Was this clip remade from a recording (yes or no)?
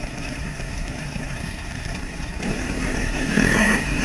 yes